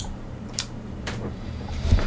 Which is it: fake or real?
fake